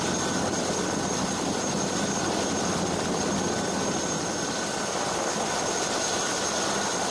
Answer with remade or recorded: recorded